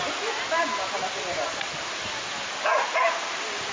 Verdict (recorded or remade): recorded